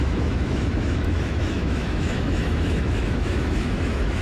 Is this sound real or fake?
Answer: fake